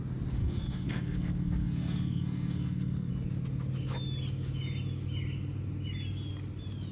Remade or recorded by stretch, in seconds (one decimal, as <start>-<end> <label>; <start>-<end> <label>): 0.0-0.4 recorded; 0.4-3.1 remade; 3.1-6.9 recorded